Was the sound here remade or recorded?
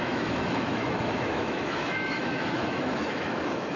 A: remade